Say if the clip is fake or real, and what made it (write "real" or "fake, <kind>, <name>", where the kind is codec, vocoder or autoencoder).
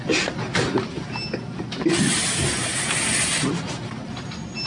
real